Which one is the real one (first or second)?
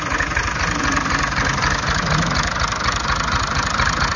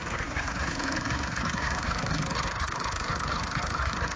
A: first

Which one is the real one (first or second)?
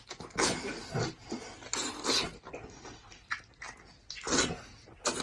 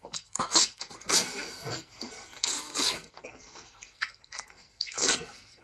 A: first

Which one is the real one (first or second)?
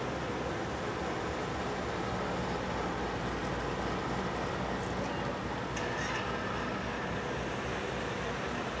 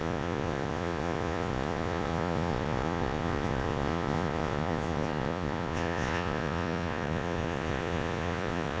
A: first